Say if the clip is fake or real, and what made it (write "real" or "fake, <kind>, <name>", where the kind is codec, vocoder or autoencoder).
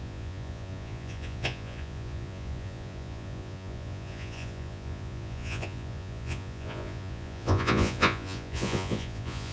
fake, vocoder, Vocos